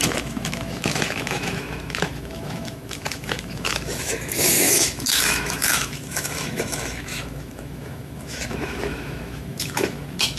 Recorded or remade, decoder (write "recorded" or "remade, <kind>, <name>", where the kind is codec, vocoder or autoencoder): remade, autoencoder, DAC-VAE